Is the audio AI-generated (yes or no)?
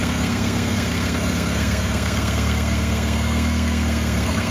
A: yes